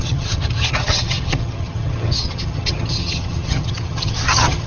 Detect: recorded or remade remade